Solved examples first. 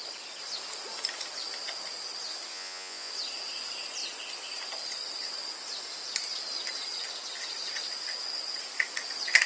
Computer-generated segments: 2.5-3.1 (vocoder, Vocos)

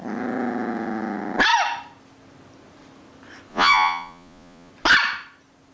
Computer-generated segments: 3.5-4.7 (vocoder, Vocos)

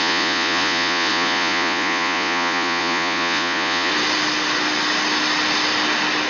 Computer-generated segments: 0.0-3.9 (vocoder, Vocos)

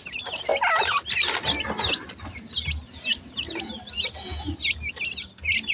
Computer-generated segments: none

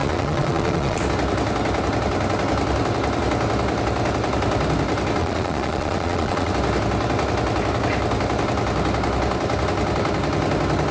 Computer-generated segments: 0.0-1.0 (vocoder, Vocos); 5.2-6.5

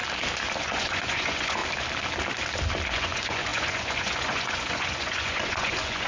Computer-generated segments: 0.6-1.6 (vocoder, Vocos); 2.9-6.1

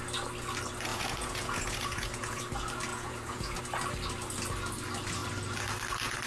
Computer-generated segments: 0.9-2.4 (vocoder, Vocos); 2.9-3.6

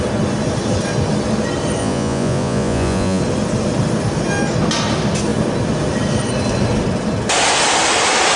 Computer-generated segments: 1.8-3.2 (vocoder, Vocos)